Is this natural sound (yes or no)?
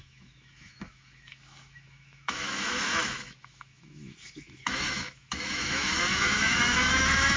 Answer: no